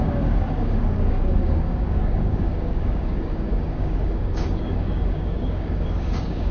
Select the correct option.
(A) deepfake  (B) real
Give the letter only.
A